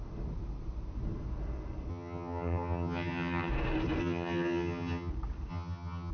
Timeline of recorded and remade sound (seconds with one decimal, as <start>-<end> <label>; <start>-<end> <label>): 0.0-1.9 recorded; 1.9-3.5 remade; 3.5-4.0 recorded; 4.0-5.1 remade; 5.1-5.5 recorded; 5.5-6.1 remade